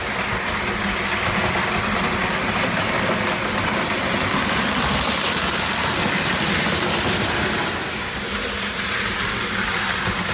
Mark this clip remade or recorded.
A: recorded